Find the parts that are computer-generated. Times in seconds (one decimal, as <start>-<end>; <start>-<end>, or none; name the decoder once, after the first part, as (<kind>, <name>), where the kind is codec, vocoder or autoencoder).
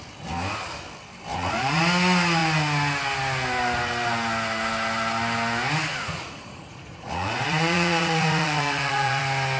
1.3-1.8 (vocoder, Vocos); 5.9-9.2